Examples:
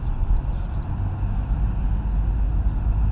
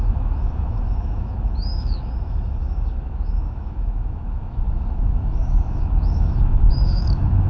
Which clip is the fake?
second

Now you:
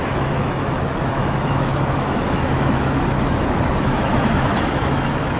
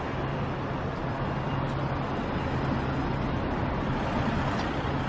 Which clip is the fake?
first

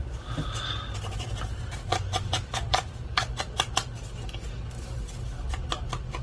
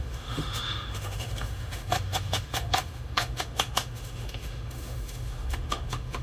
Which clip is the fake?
second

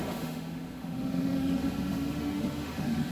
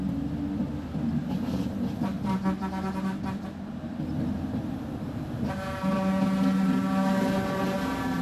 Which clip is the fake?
first